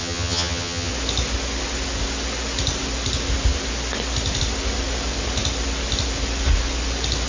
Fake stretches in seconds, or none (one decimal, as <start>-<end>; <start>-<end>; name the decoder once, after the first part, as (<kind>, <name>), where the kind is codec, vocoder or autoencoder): 0.0-0.9 (vocoder, HiFi-GAN)